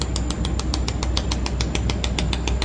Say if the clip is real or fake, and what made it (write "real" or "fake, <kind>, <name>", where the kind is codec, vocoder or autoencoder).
real